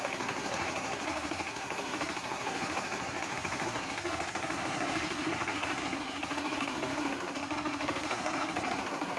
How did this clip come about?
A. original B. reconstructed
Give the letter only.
B